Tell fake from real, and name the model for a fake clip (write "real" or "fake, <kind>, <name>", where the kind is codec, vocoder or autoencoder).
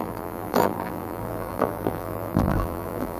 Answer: fake, vocoder, BigVGAN v2